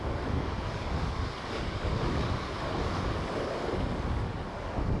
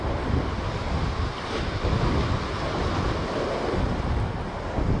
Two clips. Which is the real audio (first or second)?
second